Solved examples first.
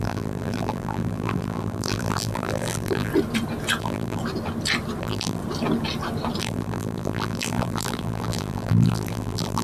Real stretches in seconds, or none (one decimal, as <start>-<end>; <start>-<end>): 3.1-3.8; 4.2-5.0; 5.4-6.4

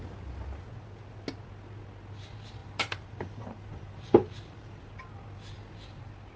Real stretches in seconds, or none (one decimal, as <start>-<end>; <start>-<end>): 0.0-2.6; 4.9-6.4

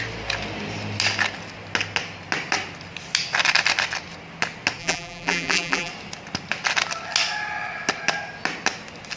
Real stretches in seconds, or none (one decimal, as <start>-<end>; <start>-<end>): 0.0-4.8; 5.9-9.2

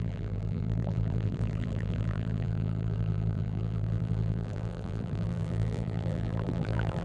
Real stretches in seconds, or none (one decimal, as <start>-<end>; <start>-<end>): none

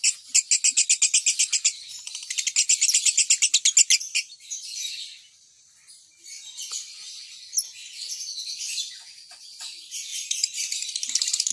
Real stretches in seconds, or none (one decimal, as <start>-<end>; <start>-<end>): 0.0-10.1

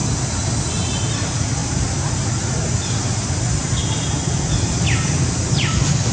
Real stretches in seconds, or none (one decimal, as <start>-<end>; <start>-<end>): 0.0-1.6; 2.3-2.8; 3.7-6.1

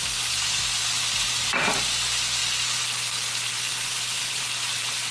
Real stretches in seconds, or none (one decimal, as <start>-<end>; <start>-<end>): 0.0-1.2; 1.8-4.2

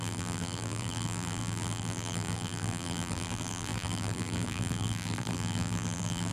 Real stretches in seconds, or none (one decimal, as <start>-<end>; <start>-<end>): none